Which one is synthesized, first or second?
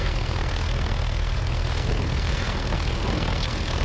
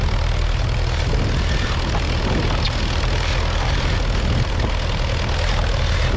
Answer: first